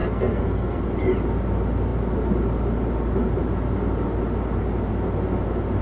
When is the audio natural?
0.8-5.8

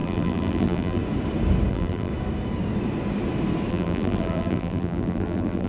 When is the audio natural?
1.0-1.7; 2.1-3.7

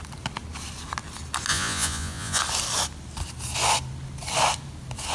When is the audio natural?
0.0-1.5; 2.4-5.1

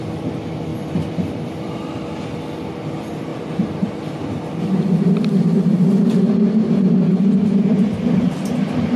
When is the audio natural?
0.0-3.3; 4.4-9.0